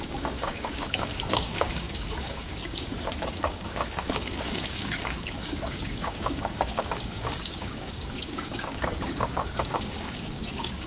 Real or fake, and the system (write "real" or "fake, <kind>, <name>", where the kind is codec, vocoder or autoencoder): fake, codec, DAC